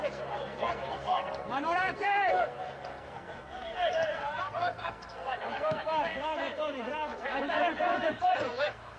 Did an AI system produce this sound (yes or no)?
yes